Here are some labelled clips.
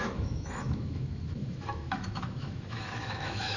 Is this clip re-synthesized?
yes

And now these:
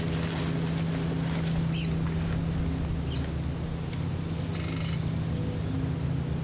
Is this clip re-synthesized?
no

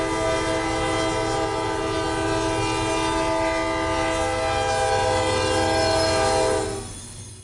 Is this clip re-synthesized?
no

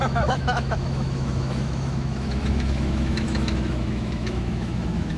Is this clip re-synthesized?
yes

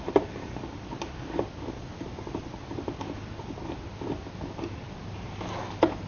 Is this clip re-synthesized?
no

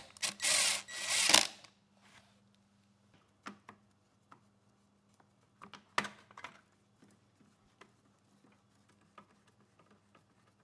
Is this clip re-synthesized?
no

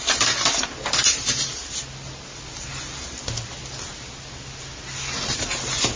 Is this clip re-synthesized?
no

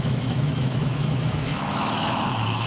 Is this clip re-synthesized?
yes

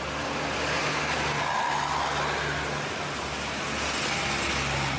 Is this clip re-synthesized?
no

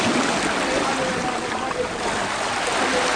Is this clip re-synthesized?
no